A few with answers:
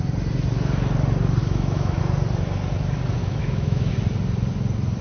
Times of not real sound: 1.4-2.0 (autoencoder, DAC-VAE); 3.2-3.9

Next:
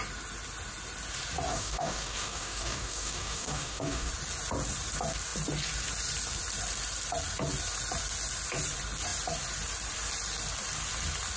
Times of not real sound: 1.5-4.1 (codec, DAC)

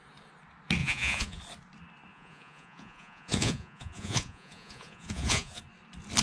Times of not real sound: 0.8-1.4 (vocoder, Vocos); 2.1-5.6